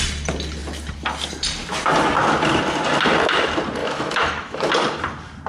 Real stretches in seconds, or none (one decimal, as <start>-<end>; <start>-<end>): 0.0-3.8; 4.7-5.5